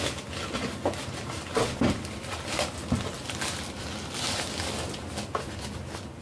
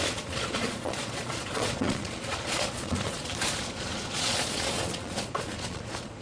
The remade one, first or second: second